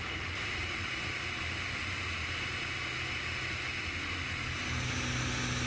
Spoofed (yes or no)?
no